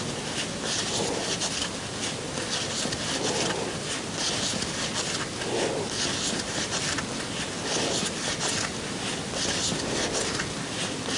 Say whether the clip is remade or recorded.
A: recorded